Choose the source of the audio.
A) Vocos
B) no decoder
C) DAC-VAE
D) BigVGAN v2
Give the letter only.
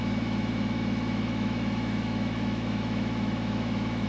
C